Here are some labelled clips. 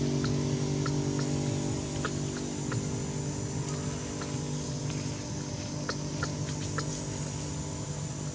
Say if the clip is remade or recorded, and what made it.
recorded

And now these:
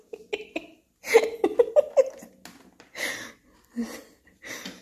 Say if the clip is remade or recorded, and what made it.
recorded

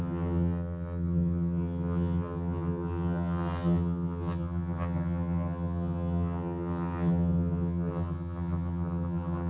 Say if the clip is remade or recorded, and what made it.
remade, vocoder, HiFi-GAN